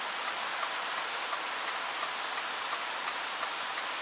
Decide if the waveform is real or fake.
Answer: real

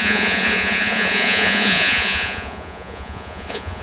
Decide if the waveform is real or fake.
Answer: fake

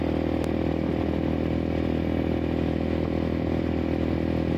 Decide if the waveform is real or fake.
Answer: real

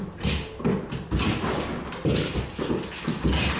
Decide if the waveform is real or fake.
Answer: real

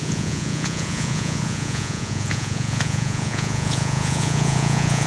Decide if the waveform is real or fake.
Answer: fake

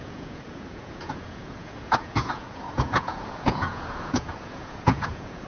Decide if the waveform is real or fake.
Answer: fake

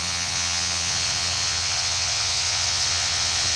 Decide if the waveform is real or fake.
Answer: fake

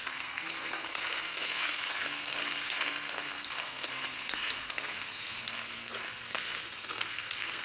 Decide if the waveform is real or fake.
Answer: fake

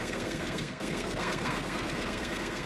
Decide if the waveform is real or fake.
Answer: fake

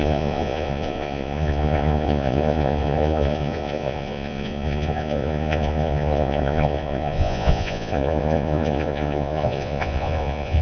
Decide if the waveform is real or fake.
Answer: fake